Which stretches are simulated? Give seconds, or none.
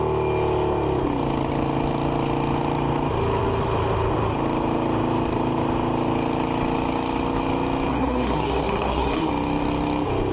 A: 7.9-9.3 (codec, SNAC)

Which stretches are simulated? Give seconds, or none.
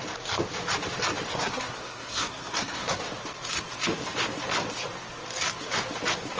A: 1.3-3.0 (codec, SNAC)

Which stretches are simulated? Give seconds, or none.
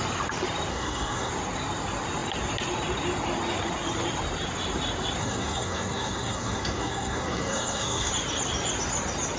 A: 0.7-1.3 (codec, SNAC); 5.2-8.1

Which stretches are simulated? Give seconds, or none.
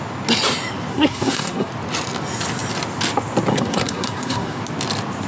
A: 0.9-1.7 (codec, SNAC); 3.5-4.6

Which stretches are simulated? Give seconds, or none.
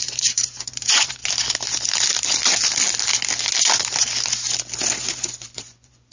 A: 0.0-1.2 (vocoder, Vocos); 4.9-6.1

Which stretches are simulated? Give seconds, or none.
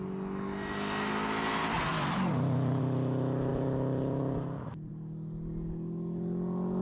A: 1.9-2.8 (vocoder, BigVGAN v2); 3.5-4.9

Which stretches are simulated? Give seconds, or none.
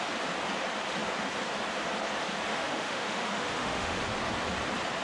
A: 2.5-4.0 (autoencoder, DAC-VAE)